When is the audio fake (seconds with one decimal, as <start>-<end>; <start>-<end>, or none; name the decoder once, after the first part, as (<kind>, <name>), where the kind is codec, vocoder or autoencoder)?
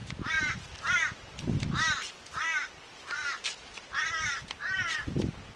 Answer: 0.0-0.8 (vocoder, BigVGAN v2); 4.2-5.1